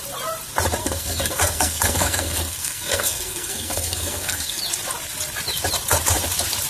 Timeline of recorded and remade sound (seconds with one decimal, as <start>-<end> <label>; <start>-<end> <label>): 0.0-0.8 recorded; 0.8-4.6 remade; 4.6-6.7 recorded